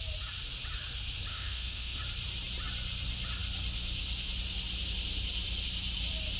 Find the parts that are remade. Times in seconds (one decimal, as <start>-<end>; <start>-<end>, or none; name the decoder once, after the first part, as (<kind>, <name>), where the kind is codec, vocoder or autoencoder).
1.3-2.0 (autoencoder, DAC-VAE)